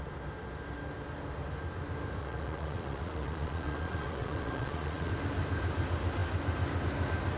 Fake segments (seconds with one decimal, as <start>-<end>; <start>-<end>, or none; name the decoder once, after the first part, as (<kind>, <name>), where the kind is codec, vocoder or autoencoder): 2.2-5.1 (vocoder, Vocos)